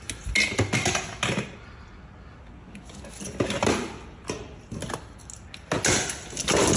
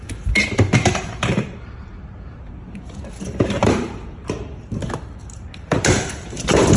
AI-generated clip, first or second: second